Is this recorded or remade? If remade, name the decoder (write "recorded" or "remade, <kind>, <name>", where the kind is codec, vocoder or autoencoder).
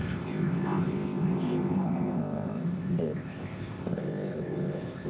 remade, codec, ZipCodec